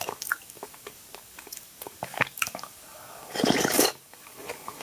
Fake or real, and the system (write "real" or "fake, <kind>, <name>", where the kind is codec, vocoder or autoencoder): fake, codec, DAC